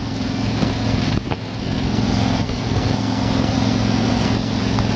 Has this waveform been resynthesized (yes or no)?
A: yes